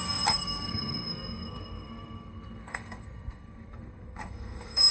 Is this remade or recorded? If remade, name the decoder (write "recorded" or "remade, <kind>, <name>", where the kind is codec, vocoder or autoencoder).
remade, codec, SNAC